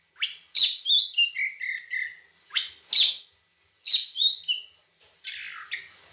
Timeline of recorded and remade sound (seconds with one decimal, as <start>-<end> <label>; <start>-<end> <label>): 0.0-6.1 recorded